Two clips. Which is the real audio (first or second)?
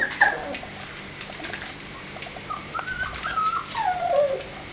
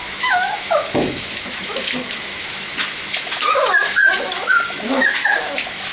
first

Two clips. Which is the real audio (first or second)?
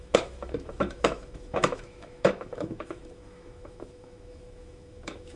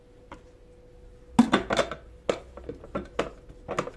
second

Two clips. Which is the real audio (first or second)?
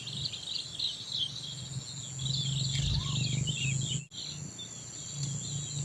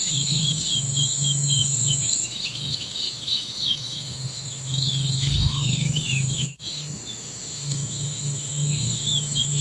first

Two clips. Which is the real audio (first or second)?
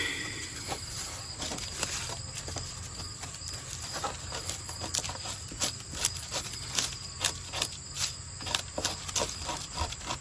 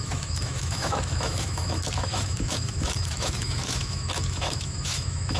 first